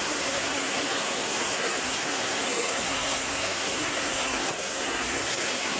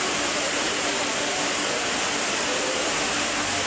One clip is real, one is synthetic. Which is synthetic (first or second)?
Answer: first